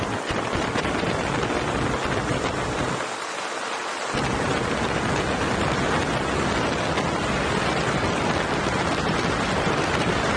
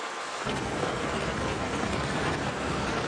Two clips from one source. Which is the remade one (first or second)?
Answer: second